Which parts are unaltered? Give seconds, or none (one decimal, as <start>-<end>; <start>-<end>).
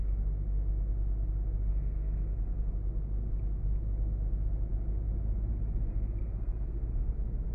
0.0-1.7; 2.7-5.9; 7.1-7.5